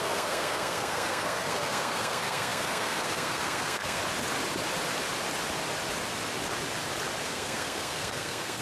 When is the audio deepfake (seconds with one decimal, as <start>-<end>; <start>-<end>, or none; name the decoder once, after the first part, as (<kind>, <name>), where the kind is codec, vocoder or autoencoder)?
0.0-4.0 (codec, SNAC); 7.2-8.6